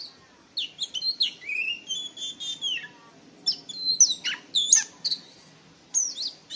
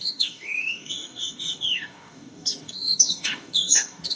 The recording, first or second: first